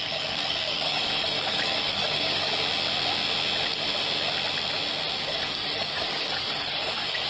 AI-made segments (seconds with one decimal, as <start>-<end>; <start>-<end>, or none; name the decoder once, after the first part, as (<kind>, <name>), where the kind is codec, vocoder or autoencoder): 0.0-2.5 (codec, DAC); 5.2-7.3